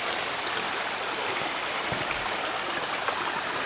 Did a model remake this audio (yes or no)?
no